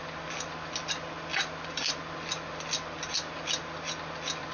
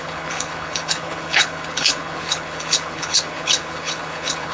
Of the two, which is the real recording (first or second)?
first